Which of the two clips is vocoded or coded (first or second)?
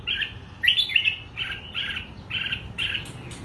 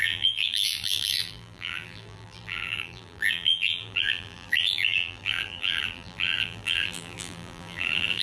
second